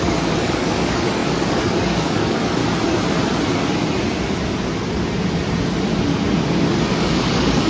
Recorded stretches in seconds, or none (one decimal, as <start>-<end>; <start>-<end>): 2.6-6.9